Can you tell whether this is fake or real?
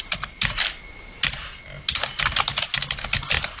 real